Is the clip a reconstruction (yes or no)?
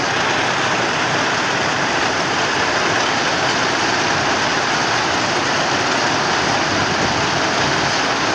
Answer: no